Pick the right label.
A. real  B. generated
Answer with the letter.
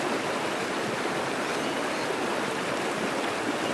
A